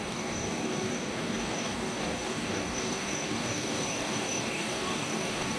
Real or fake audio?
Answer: fake